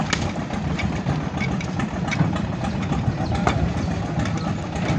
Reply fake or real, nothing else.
real